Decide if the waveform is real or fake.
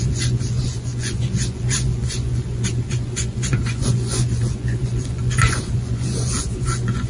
fake